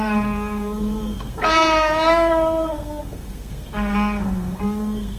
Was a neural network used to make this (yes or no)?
yes